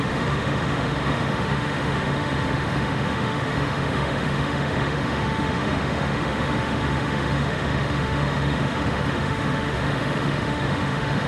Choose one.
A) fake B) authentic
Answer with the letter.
A